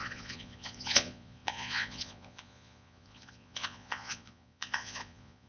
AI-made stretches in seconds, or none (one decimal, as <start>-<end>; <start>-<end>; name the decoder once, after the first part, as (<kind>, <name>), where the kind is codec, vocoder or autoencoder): 0.0-5.5 (vocoder, Vocos)